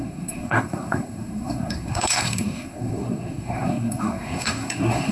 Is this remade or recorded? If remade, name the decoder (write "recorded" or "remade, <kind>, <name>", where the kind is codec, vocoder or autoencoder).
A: remade, codec, SNAC